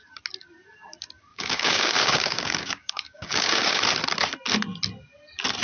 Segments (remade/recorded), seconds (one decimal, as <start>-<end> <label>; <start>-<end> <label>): 0.0-1.3 recorded; 1.3-3.8 remade; 3.8-5.6 recorded